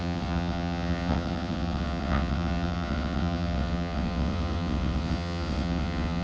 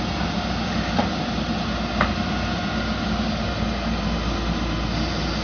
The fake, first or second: first